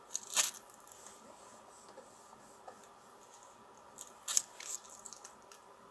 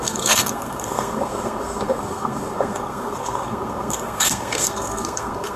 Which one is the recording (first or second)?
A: first